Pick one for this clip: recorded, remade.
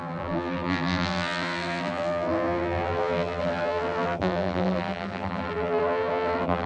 remade